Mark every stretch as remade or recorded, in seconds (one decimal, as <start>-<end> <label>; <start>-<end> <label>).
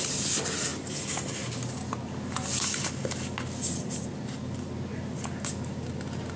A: 0.0-6.4 recorded